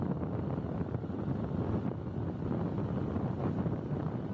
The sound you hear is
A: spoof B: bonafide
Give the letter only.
B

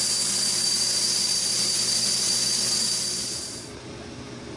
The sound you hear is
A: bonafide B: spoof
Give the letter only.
A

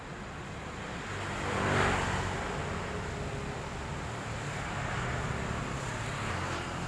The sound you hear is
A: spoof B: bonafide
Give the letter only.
B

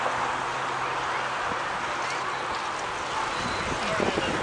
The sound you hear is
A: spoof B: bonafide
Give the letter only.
B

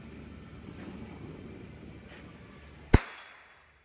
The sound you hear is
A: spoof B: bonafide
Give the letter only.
B